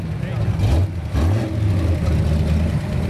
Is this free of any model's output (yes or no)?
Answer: yes